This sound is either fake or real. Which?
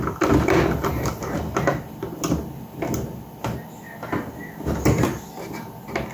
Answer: real